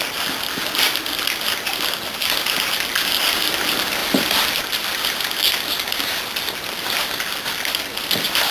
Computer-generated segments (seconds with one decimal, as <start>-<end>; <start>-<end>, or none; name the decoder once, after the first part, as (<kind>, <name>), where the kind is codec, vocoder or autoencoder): none